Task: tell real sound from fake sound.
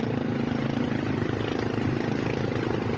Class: real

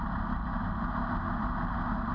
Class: real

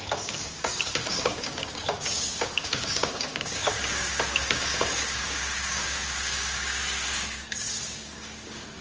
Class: fake